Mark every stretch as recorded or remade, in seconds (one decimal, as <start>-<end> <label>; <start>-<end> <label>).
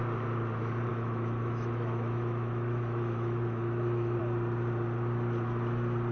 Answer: 0.0-0.9 recorded; 0.9-4.2 remade; 4.2-6.1 recorded